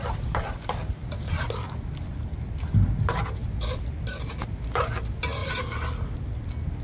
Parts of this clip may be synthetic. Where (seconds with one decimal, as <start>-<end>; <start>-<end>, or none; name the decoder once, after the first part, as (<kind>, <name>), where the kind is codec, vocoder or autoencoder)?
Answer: none